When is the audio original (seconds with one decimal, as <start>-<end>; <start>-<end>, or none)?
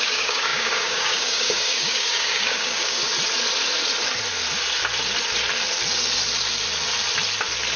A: 3.0-7.8